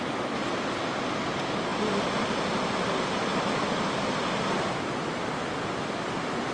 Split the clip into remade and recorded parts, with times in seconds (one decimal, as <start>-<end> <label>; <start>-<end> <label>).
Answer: 0.0-6.5 recorded